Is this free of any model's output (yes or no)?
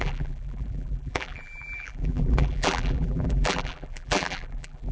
no